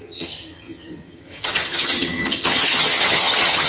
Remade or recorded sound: remade